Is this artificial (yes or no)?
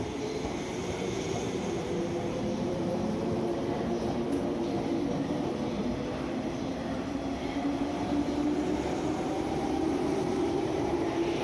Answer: yes